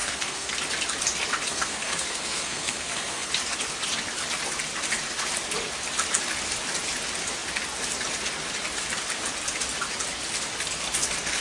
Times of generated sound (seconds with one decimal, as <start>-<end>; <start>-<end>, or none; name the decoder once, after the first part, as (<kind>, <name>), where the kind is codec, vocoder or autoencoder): 0.0-0.5 (codec, SNAC); 1.5-3.3